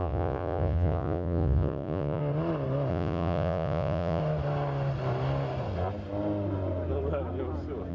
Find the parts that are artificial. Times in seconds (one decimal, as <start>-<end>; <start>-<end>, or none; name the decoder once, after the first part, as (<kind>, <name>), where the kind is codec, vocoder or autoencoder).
0.0-2.2 (vocoder, Vocos); 2.9-4.2